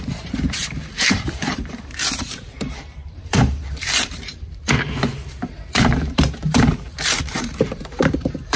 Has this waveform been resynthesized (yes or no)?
yes